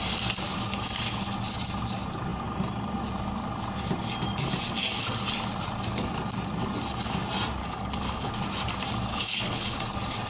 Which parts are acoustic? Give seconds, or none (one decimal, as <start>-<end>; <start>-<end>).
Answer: 0.0-7.6; 8.3-9.1; 9.8-10.3